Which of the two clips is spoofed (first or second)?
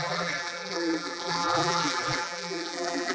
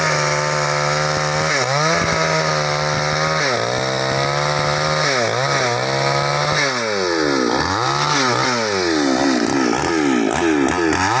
first